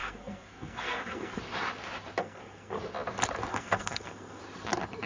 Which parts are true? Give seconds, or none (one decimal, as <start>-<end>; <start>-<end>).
1.4-2.2; 2.8-3.5; 4.4-5.1